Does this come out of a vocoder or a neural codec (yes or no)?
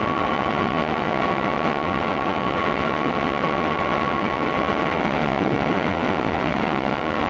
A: yes